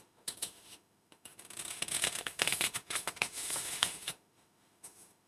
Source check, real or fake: fake